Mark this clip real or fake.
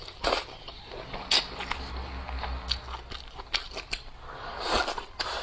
real